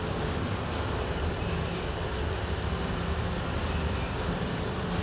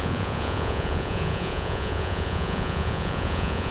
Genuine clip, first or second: first